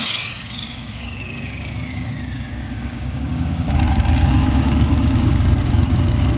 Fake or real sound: fake